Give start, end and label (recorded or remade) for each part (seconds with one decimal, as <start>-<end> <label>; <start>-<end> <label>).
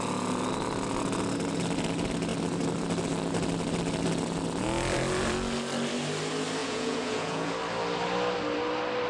0.0-6.6 recorded; 6.6-7.5 remade; 7.5-9.1 recorded